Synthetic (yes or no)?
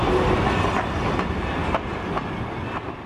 no